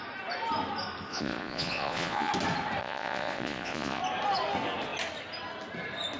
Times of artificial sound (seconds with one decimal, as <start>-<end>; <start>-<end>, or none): 1.1-2.3; 2.8-4.0